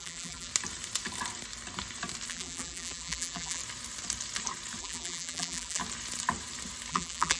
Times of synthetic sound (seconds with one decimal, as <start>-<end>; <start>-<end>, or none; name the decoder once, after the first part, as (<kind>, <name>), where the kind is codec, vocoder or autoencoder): 0.0-0.5 (vocoder, BigVGAN v2); 2.3-3.6; 4.8-5.8; 6.9-7.4